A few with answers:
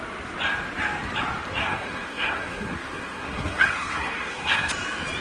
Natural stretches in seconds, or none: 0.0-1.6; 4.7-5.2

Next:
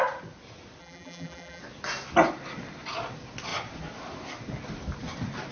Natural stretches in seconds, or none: 0.0-0.8; 1.6-5.5